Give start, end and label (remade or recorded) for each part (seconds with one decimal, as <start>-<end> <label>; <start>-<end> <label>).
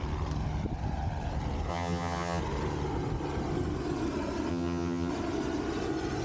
0.0-1.7 recorded; 1.7-2.4 remade; 2.4-4.5 recorded; 4.5-5.1 remade; 5.1-6.2 recorded